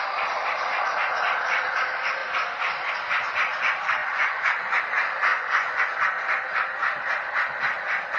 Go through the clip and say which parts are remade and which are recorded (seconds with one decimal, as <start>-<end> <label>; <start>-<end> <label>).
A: 0.0-4.0 recorded; 4.0-4.8 remade; 4.8-5.3 recorded; 5.3-5.8 remade; 5.8-8.2 recorded